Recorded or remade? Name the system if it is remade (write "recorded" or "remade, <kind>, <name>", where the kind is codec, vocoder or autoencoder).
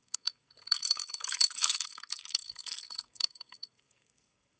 remade, codec, SNAC